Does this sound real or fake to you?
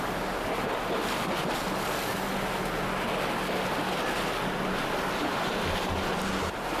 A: real